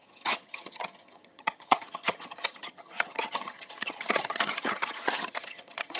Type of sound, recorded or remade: remade